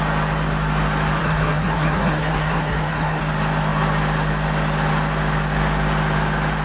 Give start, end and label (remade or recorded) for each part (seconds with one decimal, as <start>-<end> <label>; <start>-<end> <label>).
0.0-1.2 recorded; 1.2-3.2 remade; 3.2-6.6 recorded